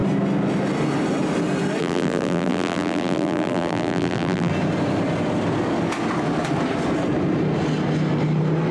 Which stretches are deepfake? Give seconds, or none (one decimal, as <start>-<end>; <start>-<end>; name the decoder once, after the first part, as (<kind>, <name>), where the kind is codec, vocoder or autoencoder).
1.8-4.5 (vocoder, BigVGAN v2)